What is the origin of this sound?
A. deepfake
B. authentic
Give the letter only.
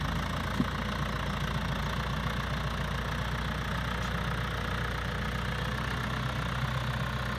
B